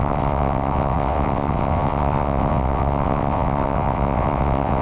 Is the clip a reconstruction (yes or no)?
yes